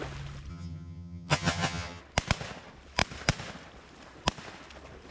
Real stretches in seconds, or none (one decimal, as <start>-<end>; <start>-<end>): 0.0-0.5; 2.0-5.1